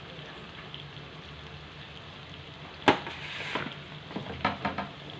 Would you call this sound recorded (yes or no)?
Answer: yes